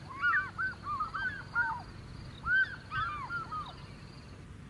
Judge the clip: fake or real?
real